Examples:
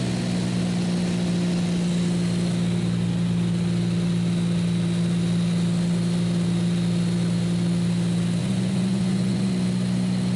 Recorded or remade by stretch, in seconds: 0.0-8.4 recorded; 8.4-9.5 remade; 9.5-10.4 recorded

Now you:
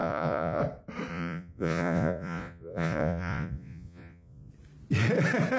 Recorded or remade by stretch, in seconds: 0.0-0.6 remade; 0.6-1.1 recorded; 1.1-4.5 remade; 4.5-5.6 recorded

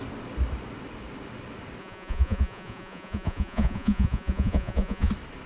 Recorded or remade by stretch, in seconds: 0.0-1.8 recorded; 1.8-5.1 remade; 5.1-5.5 recorded

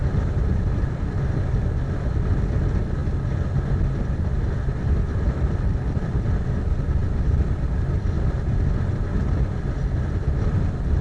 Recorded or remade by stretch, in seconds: 0.0-11.0 recorded

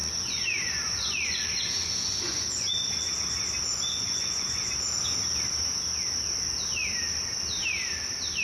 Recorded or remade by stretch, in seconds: 0.0-3.1 remade; 3.1-3.7 recorded; 3.7-4.7 remade; 4.7-8.4 recorded